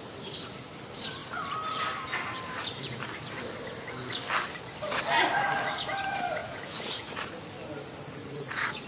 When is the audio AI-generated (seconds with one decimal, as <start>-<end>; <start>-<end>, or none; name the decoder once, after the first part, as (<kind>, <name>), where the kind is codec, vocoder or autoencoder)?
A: 6.4-7.3 (vocoder, Vocos); 8.2-8.9